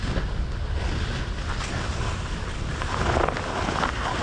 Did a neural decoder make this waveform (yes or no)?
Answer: no